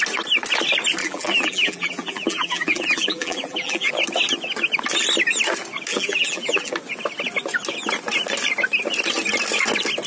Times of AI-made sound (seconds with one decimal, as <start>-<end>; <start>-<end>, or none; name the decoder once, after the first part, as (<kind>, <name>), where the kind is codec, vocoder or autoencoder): 1.0-3.9 (vocoder, BigVGAN v2); 5.9-6.7